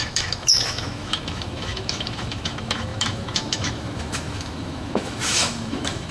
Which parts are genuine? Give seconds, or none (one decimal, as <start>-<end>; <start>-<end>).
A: none